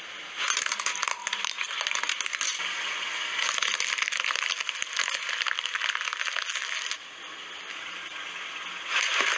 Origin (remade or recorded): recorded